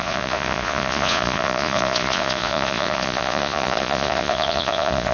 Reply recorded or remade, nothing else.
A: remade